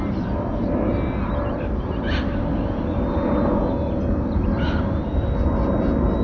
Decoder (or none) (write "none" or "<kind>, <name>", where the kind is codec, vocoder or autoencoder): none